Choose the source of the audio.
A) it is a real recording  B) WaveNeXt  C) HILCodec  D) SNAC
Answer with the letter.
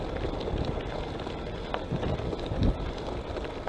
A